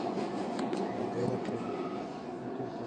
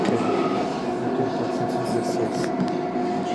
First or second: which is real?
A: second